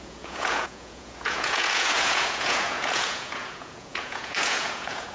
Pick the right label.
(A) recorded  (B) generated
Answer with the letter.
B